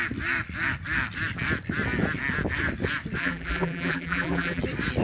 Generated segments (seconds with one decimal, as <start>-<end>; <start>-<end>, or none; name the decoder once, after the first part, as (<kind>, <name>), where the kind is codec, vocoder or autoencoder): 3.2-4.6 (vocoder, BigVGAN v2)